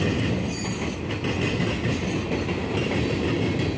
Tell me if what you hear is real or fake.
real